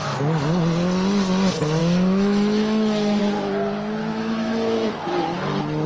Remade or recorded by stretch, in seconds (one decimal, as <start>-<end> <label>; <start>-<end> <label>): 0.0-1.8 recorded; 1.8-3.2 remade; 3.2-4.0 recorded; 4.0-5.1 remade; 5.1-5.9 recorded